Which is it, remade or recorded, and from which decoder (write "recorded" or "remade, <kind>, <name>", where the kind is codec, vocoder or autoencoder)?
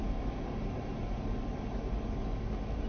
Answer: recorded